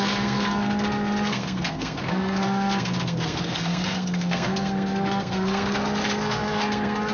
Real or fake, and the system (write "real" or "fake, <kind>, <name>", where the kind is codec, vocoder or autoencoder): fake, codec, SNAC